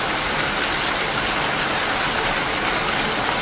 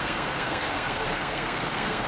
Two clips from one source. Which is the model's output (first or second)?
second